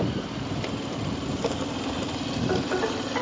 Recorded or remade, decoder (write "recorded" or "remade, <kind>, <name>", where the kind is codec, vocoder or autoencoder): recorded